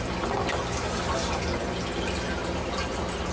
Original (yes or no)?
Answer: yes